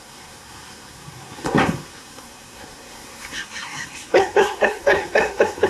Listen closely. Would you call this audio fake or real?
fake